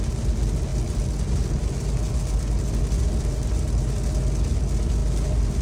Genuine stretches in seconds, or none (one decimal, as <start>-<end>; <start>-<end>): 0.0-5.6